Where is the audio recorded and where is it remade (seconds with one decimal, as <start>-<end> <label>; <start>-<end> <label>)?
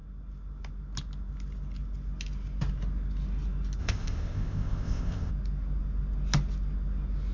0.0-3.8 recorded; 3.8-5.3 remade; 5.3-7.3 recorded